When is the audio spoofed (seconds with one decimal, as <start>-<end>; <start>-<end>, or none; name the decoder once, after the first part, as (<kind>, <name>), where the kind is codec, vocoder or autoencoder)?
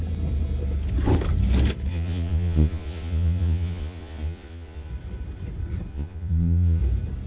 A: 1.9-4.9 (vocoder, Vocos); 5.9-6.8